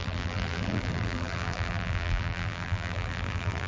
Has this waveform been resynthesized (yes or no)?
yes